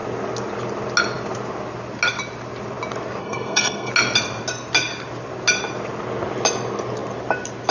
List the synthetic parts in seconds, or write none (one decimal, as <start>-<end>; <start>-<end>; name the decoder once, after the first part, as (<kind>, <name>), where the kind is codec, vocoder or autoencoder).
3.2-3.9 (codec, SNAC)